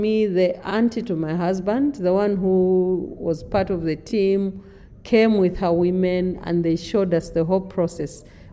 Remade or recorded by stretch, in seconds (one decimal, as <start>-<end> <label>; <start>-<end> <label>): 0.0-8.5 recorded